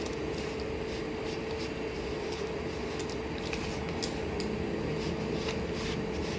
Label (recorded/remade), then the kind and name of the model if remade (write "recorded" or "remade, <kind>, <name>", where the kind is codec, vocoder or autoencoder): recorded